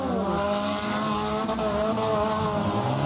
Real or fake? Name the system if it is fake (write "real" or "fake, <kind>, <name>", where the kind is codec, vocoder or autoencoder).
real